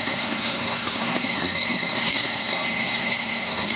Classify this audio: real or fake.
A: fake